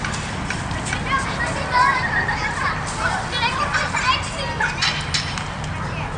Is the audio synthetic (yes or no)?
no